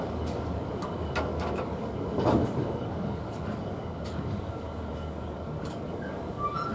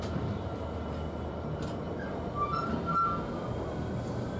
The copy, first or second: first